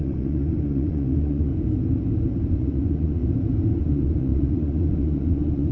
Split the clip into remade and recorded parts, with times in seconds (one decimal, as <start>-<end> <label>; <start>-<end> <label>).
0.0-1.5 remade; 1.5-2.5 recorded; 2.5-3.2 remade; 3.2-3.8 recorded; 3.8-5.7 remade